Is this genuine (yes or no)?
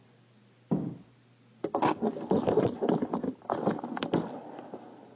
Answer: yes